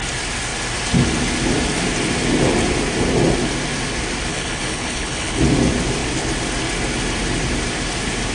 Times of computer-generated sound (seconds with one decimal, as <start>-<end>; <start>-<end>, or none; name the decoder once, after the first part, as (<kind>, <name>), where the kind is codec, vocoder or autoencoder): 4.3-5.4 (codec, HILCodec)